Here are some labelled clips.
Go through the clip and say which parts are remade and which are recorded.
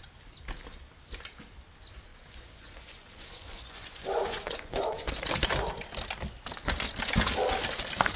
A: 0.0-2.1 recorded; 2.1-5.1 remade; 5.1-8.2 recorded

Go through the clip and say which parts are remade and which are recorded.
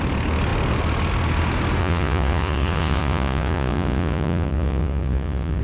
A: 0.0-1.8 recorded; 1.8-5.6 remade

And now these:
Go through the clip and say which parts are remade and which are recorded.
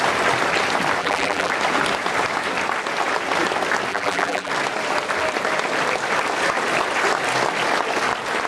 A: 0.0-1.0 recorded; 1.0-1.5 remade; 1.5-3.9 recorded; 3.9-4.5 remade; 4.5-8.5 recorded